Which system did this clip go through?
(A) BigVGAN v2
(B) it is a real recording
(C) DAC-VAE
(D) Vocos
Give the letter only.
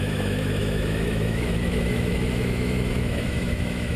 C